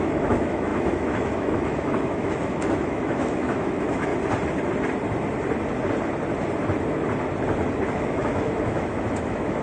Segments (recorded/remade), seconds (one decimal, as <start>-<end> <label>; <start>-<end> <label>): 0.0-4.1 remade; 4.1-7.9 recorded; 7.9-9.6 remade